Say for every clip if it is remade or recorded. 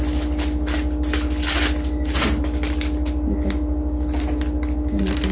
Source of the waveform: recorded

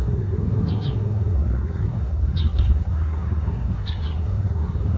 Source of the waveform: remade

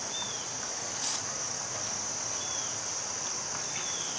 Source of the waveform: recorded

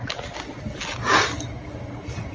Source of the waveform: recorded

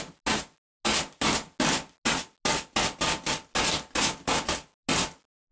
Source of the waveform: recorded